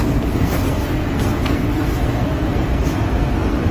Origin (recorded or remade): remade